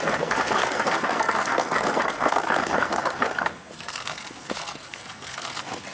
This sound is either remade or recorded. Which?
remade